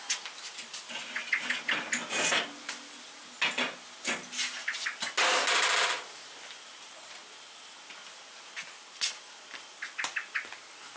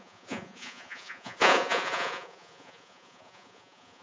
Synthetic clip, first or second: second